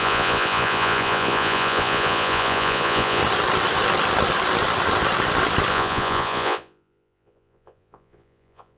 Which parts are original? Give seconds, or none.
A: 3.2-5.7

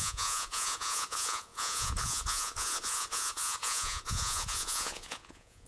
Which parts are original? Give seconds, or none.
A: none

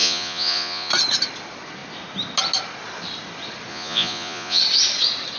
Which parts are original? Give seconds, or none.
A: 0.9-3.7; 4.6-5.4

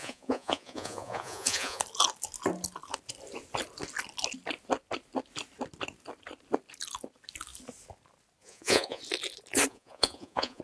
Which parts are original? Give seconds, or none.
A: 1.8-8.4; 9.0-9.7

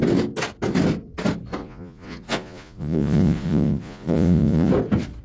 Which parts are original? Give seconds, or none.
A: 0.0-1.6; 4.7-5.2

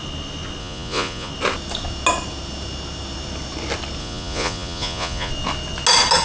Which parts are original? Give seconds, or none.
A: 0.0-0.6; 1.3-4.0; 5.3-6.2

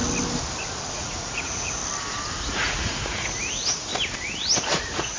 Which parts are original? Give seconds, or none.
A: 0.0-0.9; 1.8-2.4; 3.9-4.6

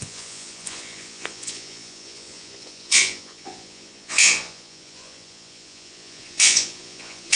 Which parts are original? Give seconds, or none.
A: none